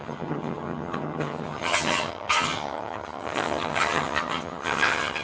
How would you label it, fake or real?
fake